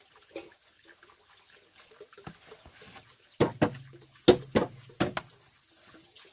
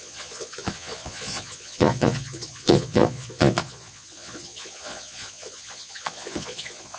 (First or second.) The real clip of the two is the first